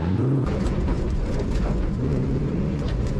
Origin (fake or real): fake